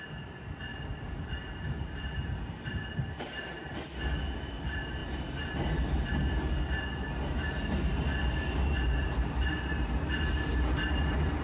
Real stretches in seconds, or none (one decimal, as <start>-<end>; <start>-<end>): 0.0-11.4